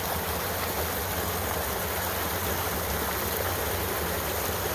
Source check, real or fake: real